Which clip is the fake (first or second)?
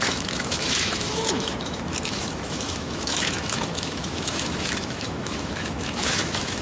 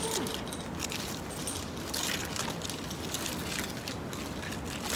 first